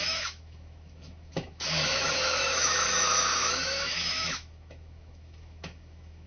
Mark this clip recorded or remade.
remade